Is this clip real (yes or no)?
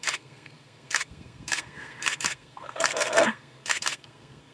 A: no